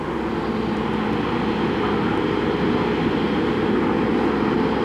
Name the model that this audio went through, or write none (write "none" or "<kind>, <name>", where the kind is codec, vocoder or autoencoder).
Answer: none